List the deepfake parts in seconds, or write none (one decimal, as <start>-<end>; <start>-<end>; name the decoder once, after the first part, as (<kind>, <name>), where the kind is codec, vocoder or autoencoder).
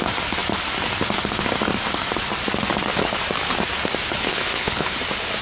4.2-4.9 (codec, HILCodec)